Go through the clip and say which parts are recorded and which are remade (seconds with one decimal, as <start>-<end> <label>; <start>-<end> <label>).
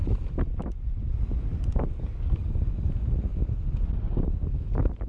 0.0-0.6 remade; 0.6-5.1 recorded